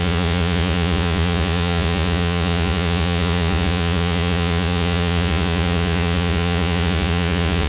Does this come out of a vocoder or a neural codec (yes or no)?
yes